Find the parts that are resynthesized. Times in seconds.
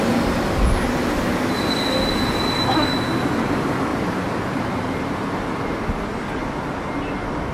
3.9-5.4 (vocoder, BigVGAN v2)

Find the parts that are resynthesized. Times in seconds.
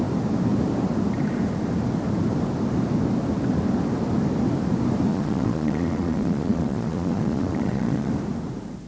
5.1-8.1 (vocoder, Vocos)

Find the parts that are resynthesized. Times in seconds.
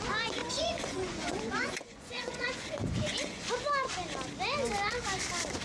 0.4-3.5 (vocoder, Vocos)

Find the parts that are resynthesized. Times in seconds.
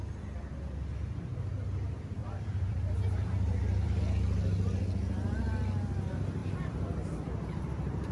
2.2-4.0 (vocoder, BigVGAN v2); 6.4-8.1